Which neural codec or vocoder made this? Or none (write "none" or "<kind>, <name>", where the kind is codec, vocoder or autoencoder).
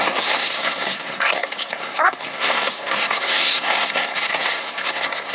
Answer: codec, SNAC